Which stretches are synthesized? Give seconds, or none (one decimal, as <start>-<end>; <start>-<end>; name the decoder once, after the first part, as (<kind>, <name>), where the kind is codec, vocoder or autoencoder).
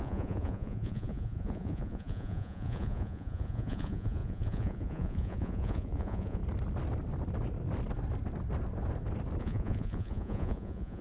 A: 0.0-6.4 (vocoder, Vocos); 9.4-11.0